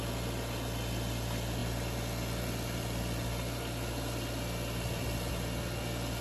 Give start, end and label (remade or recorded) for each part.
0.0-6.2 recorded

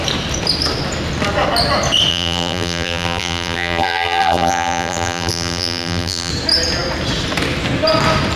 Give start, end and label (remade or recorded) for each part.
0.0-2.1 recorded; 2.1-6.3 remade; 6.3-8.4 recorded

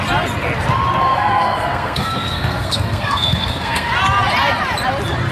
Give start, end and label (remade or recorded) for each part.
0.0-1.0 recorded; 1.0-3.9 remade; 3.9-5.3 recorded